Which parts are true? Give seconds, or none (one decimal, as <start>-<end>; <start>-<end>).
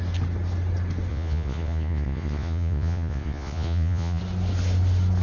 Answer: 0.0-1.1; 4.2-5.2